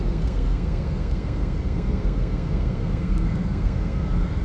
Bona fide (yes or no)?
no